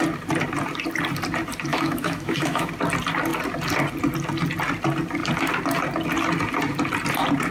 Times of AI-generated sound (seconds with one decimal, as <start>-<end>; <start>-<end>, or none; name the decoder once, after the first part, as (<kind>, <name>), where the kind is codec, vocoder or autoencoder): 1.7-2.7 (autoencoder, DAC-VAE)